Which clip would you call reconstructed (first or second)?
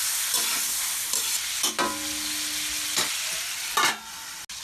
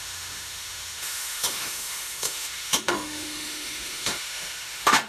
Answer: second